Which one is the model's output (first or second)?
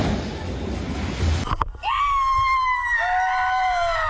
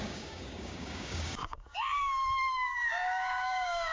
second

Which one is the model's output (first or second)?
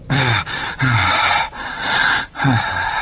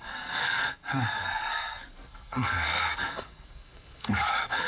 second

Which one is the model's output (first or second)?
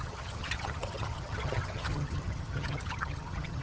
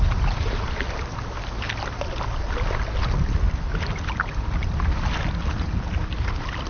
first